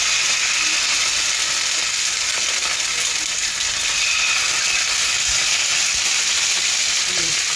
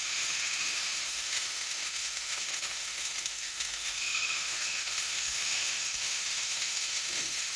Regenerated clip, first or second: second